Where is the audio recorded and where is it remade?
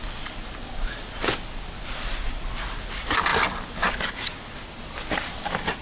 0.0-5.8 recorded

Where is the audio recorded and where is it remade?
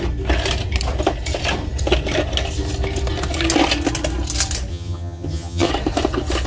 0.0-4.7 recorded; 4.7-5.7 remade; 5.7-6.5 recorded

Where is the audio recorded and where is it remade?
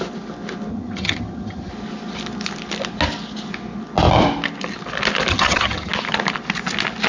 0.0-0.7 recorded; 0.7-1.7 remade; 1.7-5.3 recorded; 5.3-5.9 remade; 5.9-7.1 recorded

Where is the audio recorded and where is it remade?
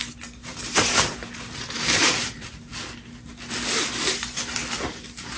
0.0-0.5 recorded; 0.5-2.7 remade; 2.7-5.4 recorded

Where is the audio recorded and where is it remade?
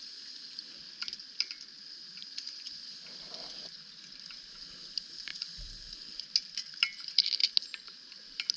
0.0-5.3 recorded; 5.3-6.2 remade; 6.2-8.6 recorded